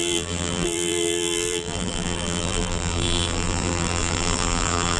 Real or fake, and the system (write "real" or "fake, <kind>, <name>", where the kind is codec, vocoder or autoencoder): fake, vocoder, BigVGAN v2